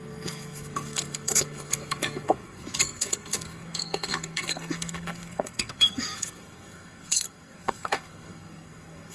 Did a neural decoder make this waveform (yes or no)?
yes